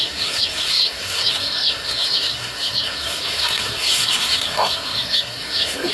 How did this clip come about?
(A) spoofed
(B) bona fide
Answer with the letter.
A